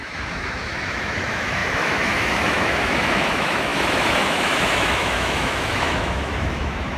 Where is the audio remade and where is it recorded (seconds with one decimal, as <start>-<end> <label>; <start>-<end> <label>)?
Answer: 0.0-7.0 remade